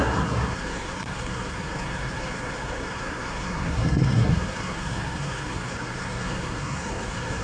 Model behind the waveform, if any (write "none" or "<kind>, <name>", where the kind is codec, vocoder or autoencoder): codec, SNAC